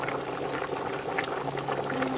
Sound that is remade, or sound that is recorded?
recorded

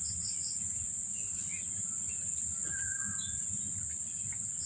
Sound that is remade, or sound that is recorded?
recorded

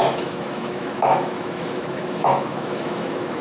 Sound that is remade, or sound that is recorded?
remade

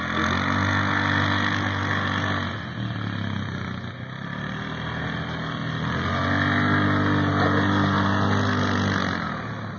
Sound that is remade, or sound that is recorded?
recorded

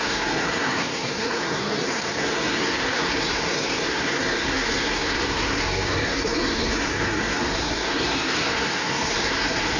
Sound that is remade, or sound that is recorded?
remade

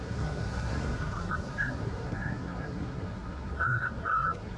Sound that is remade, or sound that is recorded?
remade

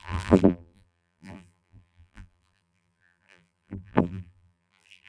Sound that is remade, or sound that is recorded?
remade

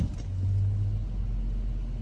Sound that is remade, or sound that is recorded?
recorded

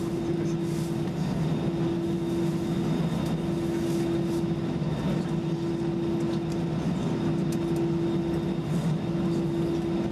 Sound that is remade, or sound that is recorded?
recorded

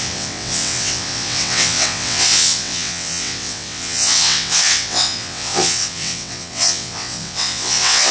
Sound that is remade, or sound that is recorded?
remade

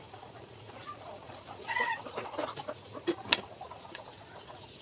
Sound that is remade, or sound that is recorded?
remade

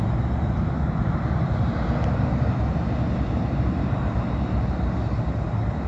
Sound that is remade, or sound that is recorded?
recorded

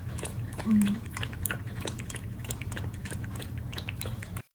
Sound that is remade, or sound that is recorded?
remade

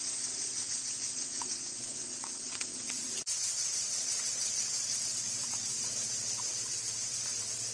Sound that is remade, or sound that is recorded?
remade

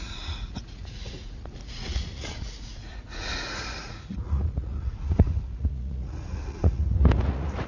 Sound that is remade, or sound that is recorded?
remade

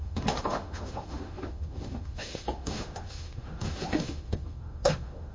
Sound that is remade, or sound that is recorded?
remade